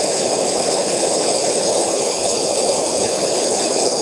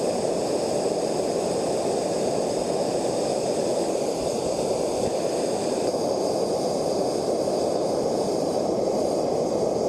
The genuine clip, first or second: second